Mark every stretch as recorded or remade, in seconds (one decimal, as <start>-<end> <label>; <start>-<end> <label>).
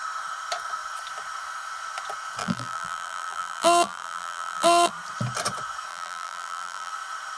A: 0.0-2.4 recorded; 2.4-4.9 remade; 4.9-5.9 recorded; 5.9-6.9 remade; 6.9-7.4 recorded